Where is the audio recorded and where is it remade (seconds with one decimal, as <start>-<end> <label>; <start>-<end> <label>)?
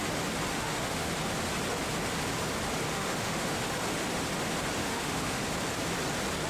0.0-0.5 recorded; 0.5-1.1 remade; 1.1-2.9 recorded; 2.9-3.6 remade; 3.6-4.8 recorded; 4.8-5.4 remade; 5.4-6.5 recorded